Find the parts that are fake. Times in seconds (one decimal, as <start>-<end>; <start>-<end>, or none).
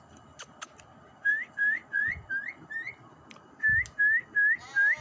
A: none